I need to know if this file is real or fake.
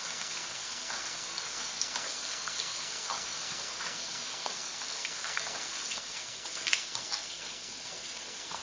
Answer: fake